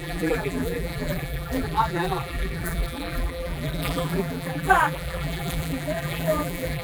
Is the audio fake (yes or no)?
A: yes